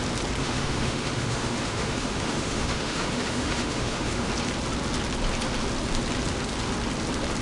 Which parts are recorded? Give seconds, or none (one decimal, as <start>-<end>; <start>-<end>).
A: 0.0-0.4; 4.3-7.4